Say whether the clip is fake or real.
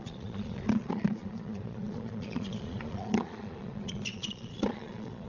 fake